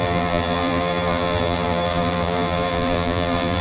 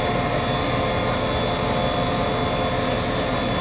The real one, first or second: second